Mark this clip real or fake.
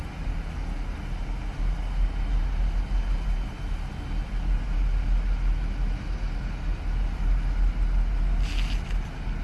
real